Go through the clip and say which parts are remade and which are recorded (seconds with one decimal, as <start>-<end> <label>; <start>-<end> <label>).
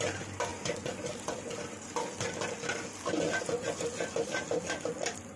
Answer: 0.0-5.4 recorded